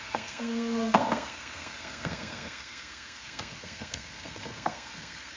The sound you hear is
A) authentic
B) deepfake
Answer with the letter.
B